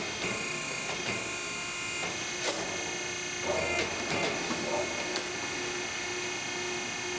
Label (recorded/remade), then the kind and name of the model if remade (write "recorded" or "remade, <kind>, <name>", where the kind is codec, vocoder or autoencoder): recorded